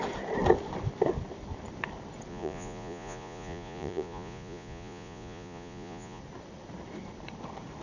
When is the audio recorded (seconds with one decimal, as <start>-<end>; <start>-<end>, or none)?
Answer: 0.0-2.3; 6.2-7.8